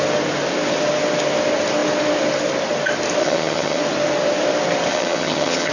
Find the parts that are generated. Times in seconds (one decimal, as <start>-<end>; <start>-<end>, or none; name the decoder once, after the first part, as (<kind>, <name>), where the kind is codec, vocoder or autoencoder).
3.2-3.8 (vocoder, HiFi-GAN); 4.9-5.7